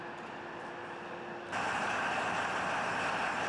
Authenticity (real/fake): real